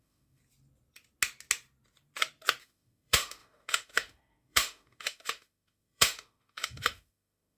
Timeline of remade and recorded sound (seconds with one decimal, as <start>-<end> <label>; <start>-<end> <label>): 0.0-0.4 remade; 0.4-2.6 recorded; 2.6-7.6 remade